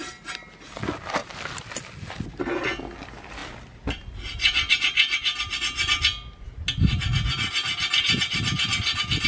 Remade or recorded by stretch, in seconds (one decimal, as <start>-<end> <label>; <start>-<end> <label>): 0.0-9.3 recorded